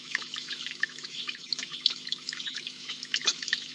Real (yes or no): no